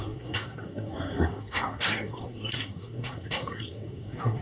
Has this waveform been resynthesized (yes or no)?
yes